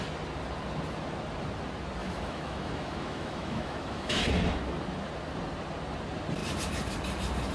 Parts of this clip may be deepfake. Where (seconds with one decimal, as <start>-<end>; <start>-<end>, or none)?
2.0-4.3